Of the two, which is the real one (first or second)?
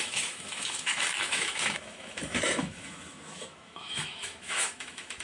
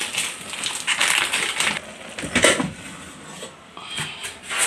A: second